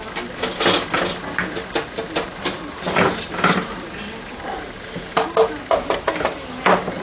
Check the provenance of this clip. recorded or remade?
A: recorded